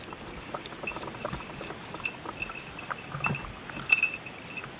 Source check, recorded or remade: recorded